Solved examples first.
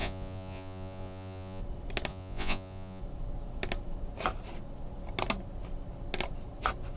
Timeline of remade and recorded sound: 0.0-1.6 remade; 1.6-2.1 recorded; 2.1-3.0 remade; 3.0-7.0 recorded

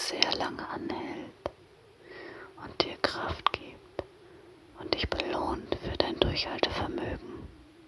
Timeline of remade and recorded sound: 0.0-7.9 recorded

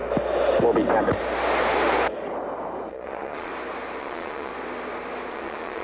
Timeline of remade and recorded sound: 0.0-2.9 recorded; 2.9-3.5 remade; 3.5-4.0 recorded; 4.0-4.5 remade; 4.5-5.3 recorded; 5.3-5.8 remade

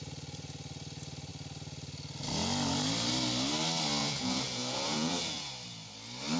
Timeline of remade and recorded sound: 0.0-4.0 recorded; 4.0-5.5 remade; 5.5-6.4 recorded

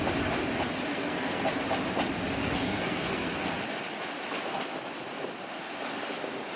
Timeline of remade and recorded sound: 0.0-0.9 recorded; 0.9-1.6 remade; 1.6-2.4 recorded; 2.4-3.6 remade; 3.6-6.6 recorded

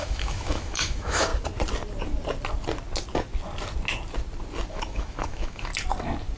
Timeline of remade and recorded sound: 0.0-1.3 remade; 1.3-4.7 recorded; 4.7-5.7 remade; 5.7-6.4 recorded